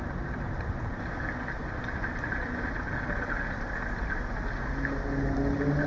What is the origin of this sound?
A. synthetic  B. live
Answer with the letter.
B